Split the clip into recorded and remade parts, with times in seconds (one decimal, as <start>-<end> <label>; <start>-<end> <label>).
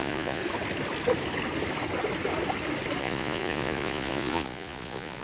0.0-0.4 remade; 0.4-3.0 recorded; 3.0-5.2 remade